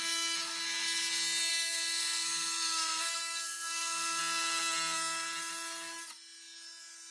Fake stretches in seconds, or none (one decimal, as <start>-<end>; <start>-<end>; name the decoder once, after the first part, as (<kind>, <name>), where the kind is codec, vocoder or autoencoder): 1.5-4.2 (codec, SNAC)